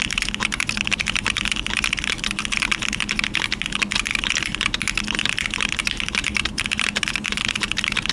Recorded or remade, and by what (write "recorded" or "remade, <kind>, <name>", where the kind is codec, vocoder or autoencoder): recorded